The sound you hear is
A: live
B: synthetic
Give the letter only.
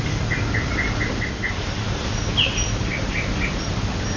A